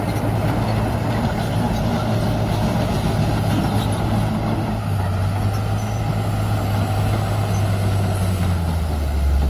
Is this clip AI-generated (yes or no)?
no